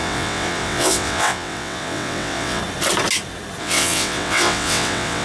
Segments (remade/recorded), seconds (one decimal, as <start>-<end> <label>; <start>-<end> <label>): 0.0-2.6 remade; 2.6-3.6 recorded; 3.6-5.2 remade